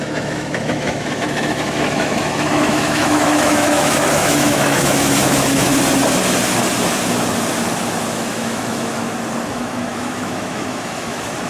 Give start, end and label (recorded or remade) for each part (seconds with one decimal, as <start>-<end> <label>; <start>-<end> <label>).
0.0-5.7 remade; 5.7-8.1 recorded; 8.1-9.0 remade; 9.0-9.5 recorded; 9.5-11.5 remade